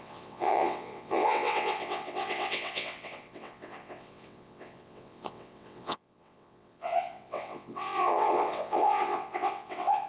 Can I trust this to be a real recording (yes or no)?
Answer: no